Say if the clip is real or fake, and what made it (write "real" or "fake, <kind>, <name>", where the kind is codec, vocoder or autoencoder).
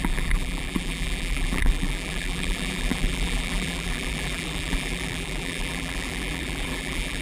fake, vocoder, BigVGAN v2